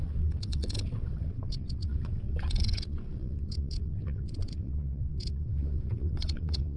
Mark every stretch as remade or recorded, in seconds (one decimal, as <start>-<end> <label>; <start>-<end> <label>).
0.0-6.8 remade